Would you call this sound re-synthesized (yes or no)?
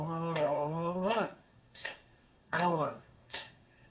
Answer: yes